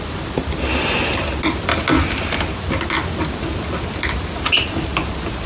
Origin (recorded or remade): recorded